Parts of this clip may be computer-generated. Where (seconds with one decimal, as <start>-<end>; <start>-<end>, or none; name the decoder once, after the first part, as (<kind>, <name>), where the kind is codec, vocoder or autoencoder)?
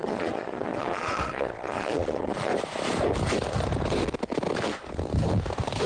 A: 0.0-2.5 (vocoder, Vocos)